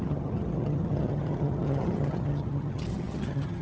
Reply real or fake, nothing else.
fake